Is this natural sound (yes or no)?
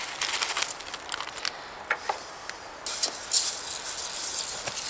yes